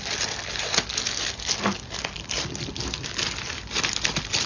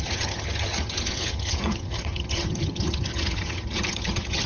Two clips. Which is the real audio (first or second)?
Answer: first